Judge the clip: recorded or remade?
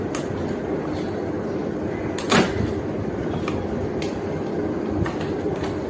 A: recorded